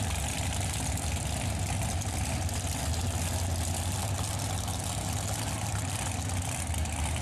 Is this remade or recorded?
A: recorded